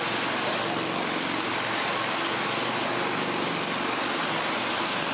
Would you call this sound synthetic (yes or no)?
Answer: no